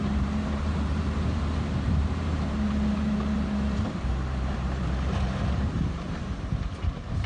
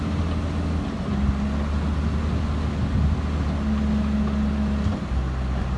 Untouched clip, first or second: second